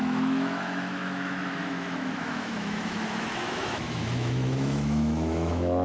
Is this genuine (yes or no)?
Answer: no